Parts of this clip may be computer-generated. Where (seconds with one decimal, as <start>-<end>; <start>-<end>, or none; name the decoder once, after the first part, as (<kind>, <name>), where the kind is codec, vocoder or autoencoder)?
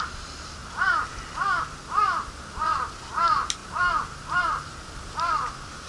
3.6-5.1 (vocoder, BigVGAN v2)